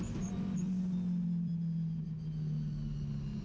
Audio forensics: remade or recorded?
recorded